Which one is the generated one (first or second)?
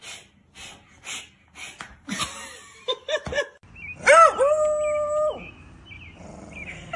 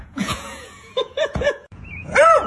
second